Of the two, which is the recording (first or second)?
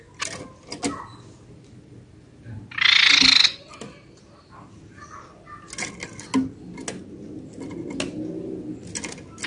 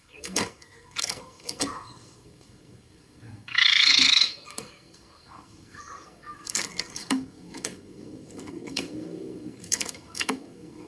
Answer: first